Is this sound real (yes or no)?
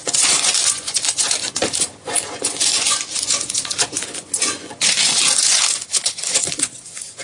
no